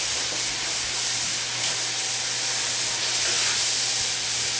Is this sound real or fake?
real